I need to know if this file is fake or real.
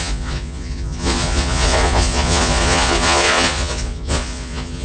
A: fake